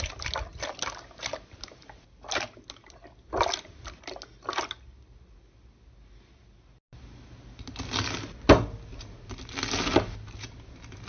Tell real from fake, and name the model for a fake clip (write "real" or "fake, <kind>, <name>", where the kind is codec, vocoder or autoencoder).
real